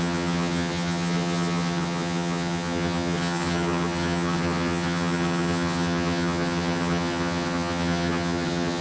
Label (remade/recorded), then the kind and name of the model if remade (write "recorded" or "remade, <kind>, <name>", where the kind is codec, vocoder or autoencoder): remade, vocoder, HiFi-GAN